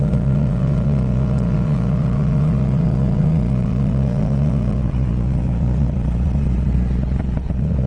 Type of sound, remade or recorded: remade